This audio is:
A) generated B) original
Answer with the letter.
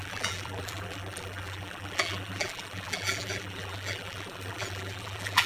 A